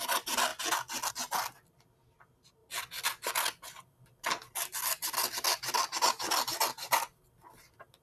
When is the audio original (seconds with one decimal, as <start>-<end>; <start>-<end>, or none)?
0.0-8.0